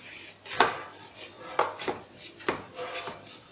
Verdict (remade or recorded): recorded